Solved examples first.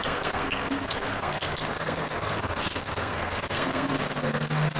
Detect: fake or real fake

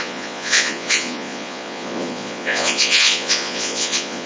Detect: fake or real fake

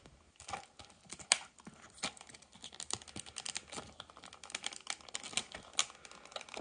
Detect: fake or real real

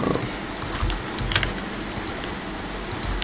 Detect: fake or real real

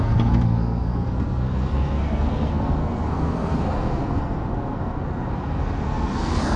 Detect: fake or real fake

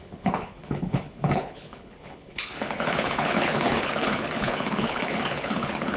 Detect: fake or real fake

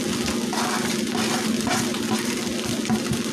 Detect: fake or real real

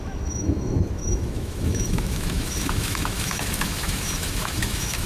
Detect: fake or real fake